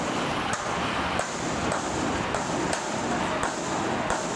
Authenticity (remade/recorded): recorded